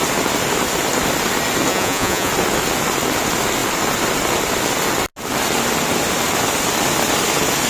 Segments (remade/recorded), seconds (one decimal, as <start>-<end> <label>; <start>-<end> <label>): 0.0-1.7 recorded; 1.7-2.3 remade; 2.3-7.7 recorded